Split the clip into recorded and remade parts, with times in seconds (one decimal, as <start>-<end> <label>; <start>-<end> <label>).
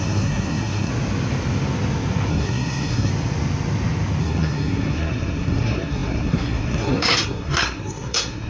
0.0-0.9 remade; 0.9-2.3 recorded; 2.3-3.1 remade; 3.1-4.2 recorded; 4.2-8.5 remade